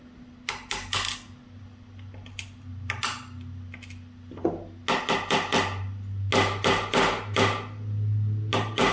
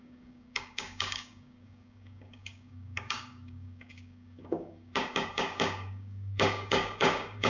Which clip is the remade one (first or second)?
second